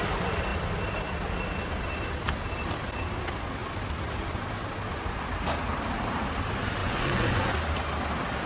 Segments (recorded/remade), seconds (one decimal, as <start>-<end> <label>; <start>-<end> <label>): 0.0-6.8 recorded; 6.8-7.6 remade; 7.6-8.5 recorded